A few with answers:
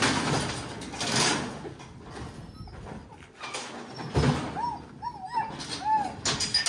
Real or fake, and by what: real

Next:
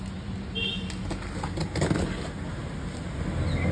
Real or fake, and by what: real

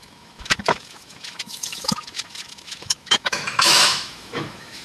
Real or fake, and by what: fake, autoencoder, DAC-VAE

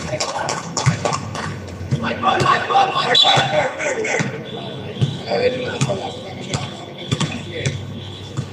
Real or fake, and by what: fake, codec, HILCodec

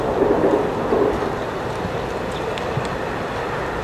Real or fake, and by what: real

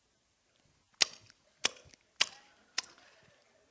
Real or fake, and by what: real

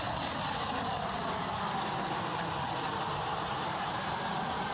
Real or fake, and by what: real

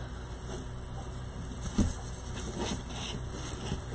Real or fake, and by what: real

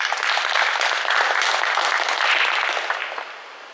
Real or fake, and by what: real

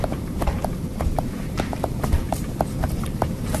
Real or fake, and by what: fake, vocoder, BigVGAN v2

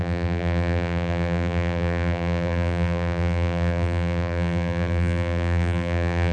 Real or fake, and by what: fake, vocoder, BigVGAN v2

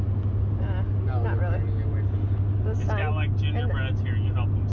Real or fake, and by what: real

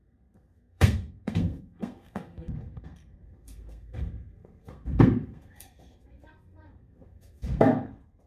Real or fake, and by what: fake, codec, SNAC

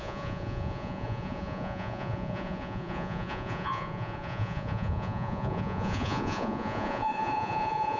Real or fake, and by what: fake, vocoder, Vocos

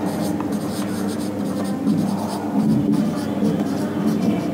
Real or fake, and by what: real